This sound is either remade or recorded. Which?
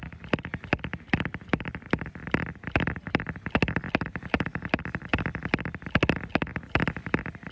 recorded